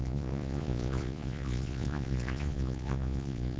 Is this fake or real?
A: fake